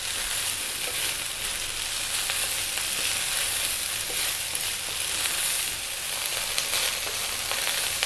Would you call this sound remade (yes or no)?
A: no